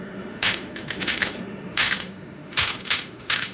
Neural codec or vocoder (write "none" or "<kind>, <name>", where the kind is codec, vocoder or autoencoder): autoencoder, DAC-VAE